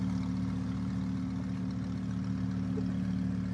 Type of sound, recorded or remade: recorded